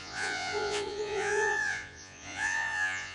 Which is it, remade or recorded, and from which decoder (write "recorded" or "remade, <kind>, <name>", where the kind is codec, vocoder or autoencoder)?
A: remade, vocoder, Vocos